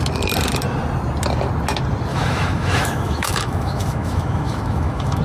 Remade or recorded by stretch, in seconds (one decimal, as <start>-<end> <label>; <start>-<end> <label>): 0.0-2.1 recorded; 2.1-5.2 remade